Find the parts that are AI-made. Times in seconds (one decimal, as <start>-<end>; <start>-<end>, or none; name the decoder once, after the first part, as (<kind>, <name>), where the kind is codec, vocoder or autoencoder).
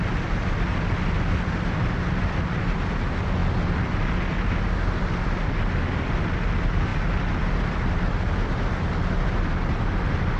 none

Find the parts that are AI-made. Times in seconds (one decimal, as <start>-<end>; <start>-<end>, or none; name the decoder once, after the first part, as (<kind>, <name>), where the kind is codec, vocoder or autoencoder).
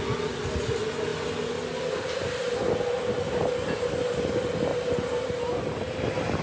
none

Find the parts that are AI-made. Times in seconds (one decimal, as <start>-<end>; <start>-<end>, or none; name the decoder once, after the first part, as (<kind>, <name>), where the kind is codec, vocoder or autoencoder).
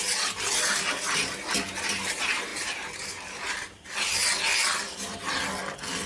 0.0-4.2 (vocoder, BigVGAN v2)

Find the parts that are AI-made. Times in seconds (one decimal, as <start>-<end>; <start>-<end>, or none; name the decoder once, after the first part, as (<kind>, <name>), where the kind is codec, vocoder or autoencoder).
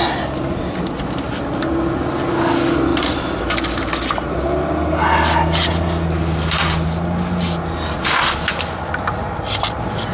2.9-3.4 (vocoder, BigVGAN v2)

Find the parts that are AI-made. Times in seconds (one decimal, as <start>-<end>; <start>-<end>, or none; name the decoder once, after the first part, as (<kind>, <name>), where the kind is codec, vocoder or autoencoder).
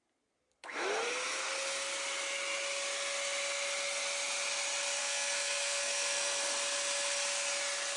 5.0-6.4 (codec, SNAC)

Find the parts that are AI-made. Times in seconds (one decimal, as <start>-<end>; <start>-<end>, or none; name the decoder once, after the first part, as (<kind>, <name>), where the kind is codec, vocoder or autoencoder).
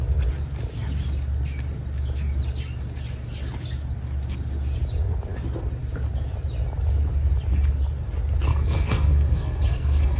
8.5-10.2 (codec, SNAC)